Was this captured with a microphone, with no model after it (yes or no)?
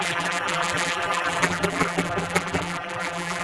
no